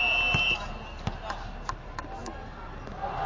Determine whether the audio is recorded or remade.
recorded